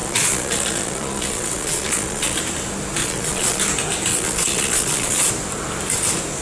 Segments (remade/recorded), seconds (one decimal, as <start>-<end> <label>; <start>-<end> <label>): 0.0-2.4 remade; 2.4-3.0 recorded; 3.0-3.6 remade; 3.6-4.1 recorded; 4.1-5.3 remade; 5.3-6.4 recorded

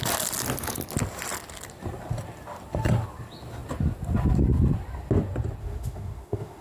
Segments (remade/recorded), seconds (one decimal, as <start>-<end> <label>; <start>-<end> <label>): 0.0-5.6 recorded; 5.6-6.6 remade

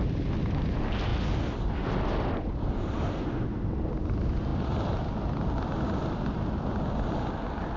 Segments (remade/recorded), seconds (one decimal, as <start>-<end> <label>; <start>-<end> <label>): 0.0-7.8 recorded

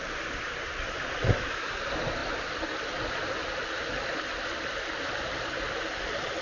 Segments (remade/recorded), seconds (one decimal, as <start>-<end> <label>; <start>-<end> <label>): 0.0-1.2 recorded; 1.2-1.7 remade; 1.7-6.4 recorded

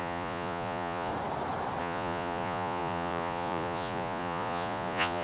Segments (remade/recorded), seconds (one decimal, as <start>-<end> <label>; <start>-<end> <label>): 0.0-1.1 remade; 1.1-1.8 recorded; 1.8-5.2 remade

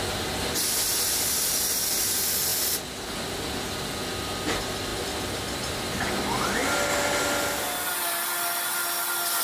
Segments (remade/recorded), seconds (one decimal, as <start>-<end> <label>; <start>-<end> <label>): 0.0-9.4 recorded

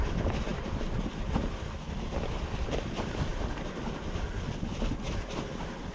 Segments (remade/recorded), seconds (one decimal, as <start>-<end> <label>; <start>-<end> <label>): 0.0-3.3 remade; 3.3-5.9 recorded

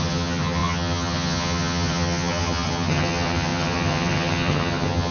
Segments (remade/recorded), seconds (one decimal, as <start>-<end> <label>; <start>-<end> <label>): 0.0-5.1 remade